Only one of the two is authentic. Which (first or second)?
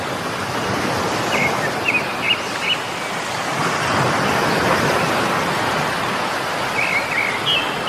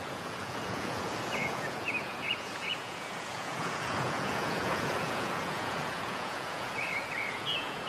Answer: first